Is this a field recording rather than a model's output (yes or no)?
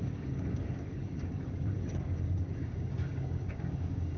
no